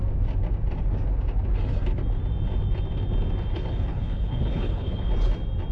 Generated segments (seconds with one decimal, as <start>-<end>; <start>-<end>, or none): 3.5-5.1